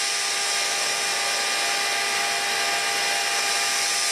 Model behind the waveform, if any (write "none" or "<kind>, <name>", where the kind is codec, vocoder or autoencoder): none